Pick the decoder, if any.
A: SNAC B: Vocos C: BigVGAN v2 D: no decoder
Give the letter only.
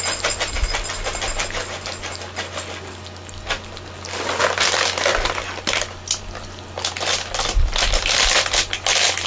D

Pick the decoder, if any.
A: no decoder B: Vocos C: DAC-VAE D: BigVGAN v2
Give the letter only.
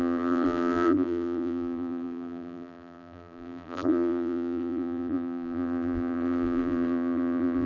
D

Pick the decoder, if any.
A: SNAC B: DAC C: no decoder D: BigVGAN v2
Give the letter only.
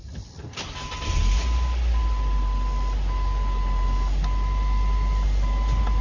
C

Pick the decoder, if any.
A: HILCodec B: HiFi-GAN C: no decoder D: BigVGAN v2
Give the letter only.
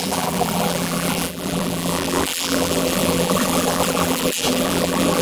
D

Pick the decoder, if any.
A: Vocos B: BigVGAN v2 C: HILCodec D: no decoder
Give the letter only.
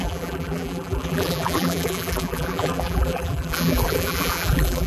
B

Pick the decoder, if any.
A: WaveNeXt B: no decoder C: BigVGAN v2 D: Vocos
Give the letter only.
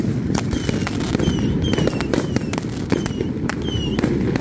B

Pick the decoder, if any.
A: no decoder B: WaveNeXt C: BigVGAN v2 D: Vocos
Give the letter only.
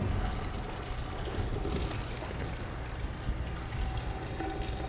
A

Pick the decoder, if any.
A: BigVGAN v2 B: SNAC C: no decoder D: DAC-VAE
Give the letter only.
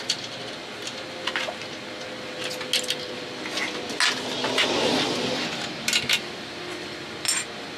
C